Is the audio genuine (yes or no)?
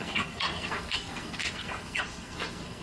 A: no